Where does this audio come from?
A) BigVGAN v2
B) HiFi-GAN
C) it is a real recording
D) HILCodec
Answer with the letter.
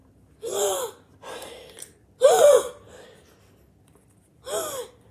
C